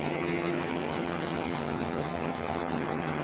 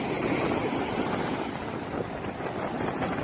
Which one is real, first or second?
second